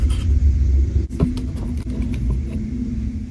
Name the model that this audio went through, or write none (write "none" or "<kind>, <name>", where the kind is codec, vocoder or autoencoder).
none